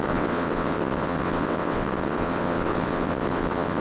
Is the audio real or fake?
fake